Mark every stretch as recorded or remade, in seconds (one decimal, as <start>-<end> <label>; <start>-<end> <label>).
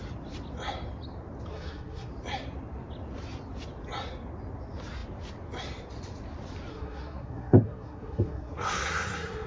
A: 0.0-1.5 recorded; 1.5-2.1 remade; 2.1-6.7 recorded; 6.7-9.5 remade